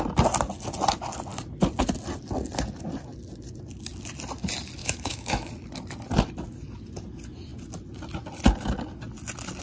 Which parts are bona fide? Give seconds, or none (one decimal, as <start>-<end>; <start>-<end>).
0.0-4.8; 5.5-9.6